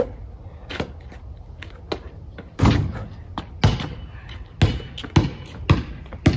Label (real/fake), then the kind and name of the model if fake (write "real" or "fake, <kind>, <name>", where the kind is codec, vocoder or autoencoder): real